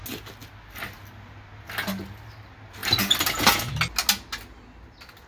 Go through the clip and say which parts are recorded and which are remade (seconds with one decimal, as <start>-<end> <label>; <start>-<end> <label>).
0.0-5.3 recorded

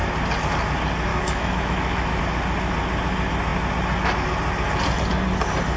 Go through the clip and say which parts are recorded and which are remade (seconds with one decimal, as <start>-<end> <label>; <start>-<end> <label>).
0.0-1.1 recorded; 1.1-2.2 remade; 2.2-5.8 recorded

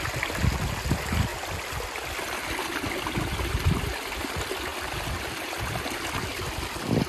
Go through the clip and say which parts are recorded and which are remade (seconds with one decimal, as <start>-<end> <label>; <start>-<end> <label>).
0.0-7.1 recorded

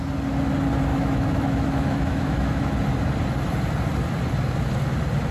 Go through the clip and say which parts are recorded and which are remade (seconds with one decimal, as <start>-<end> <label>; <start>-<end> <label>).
0.0-0.9 recorded; 0.9-2.7 remade; 2.7-5.3 recorded

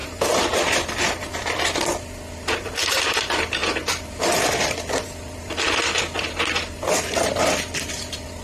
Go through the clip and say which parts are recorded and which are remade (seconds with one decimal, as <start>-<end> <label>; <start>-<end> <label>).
0.0-8.4 recorded

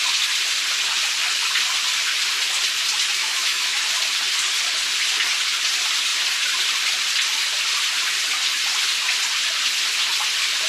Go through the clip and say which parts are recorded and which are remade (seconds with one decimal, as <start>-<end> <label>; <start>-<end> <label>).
0.0-3.2 recorded; 3.2-3.8 remade; 3.8-10.7 recorded